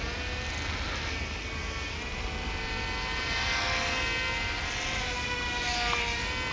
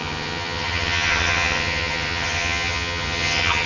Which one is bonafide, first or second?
first